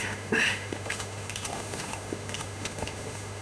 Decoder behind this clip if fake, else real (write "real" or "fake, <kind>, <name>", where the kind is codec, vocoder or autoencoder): fake, autoencoder, DAC-VAE